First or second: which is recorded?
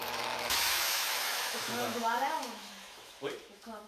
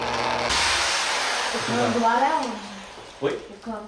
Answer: second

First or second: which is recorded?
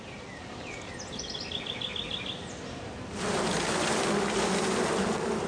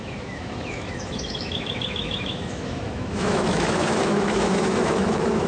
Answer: first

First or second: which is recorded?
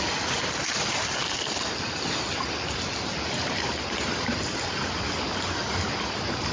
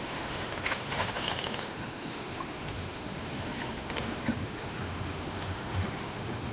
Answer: first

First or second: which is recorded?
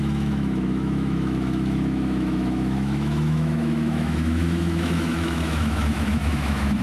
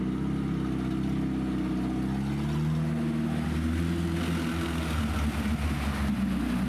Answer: second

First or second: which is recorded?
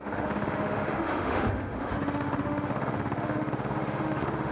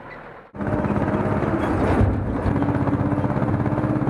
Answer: second